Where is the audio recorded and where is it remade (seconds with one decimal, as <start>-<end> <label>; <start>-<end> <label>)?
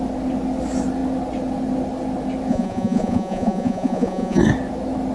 0.0-2.5 recorded; 2.5-4.4 remade; 4.4-5.1 recorded